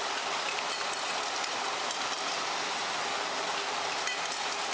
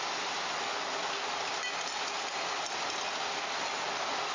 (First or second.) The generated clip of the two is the first